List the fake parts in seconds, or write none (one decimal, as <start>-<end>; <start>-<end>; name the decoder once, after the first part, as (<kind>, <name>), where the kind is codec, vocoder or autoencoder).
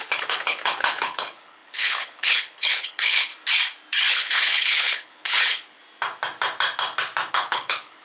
0.0-3.3 (codec, HILCodec); 4.1-5.8; 7.3-8.0